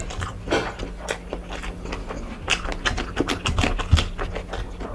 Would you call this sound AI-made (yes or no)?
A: no